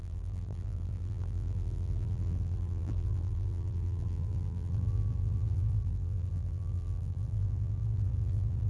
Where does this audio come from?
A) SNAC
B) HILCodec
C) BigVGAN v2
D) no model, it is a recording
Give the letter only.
C